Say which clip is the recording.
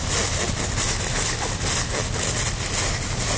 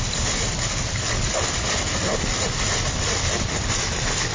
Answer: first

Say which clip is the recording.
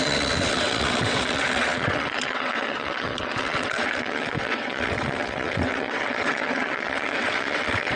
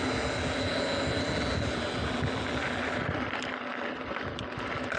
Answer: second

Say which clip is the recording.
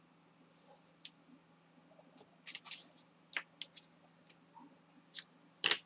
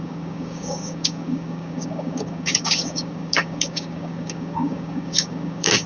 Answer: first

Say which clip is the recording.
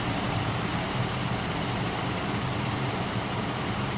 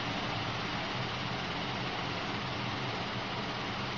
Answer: second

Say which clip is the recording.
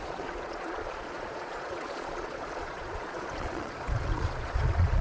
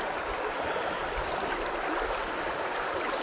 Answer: second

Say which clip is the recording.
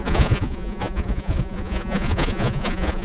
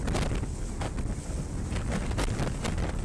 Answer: second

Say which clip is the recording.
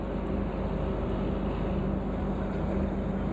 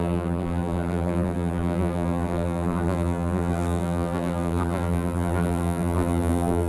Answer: first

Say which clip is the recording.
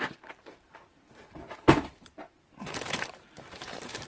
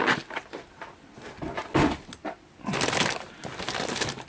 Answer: second